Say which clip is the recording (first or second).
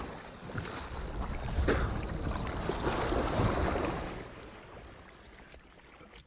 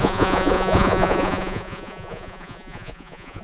first